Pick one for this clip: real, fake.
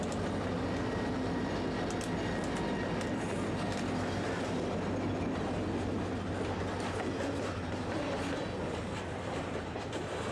real